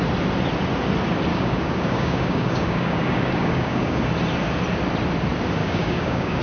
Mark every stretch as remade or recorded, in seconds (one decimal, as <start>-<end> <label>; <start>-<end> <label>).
0.0-1.3 recorded; 1.3-4.1 remade; 4.1-5.6 recorded; 5.6-6.4 remade